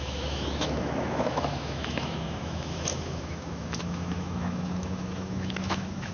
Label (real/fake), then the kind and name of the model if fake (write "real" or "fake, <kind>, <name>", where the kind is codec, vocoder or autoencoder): fake, autoencoder, DAC-VAE